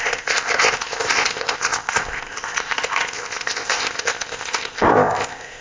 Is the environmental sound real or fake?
fake